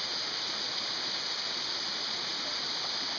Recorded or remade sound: recorded